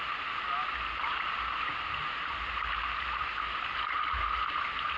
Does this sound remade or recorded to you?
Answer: recorded